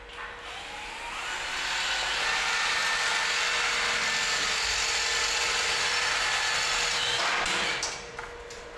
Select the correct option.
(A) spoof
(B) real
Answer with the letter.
B